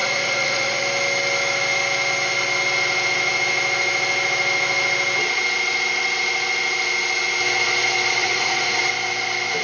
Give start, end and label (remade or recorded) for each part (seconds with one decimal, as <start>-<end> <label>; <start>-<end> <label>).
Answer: 0.0-0.8 remade; 0.8-8.2 recorded; 8.2-8.8 remade; 8.8-9.6 recorded